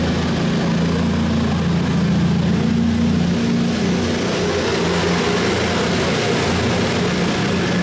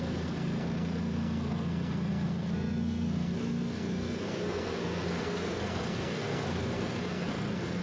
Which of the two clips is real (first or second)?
first